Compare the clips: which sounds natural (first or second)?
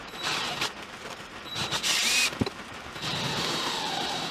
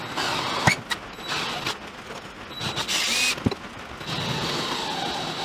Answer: second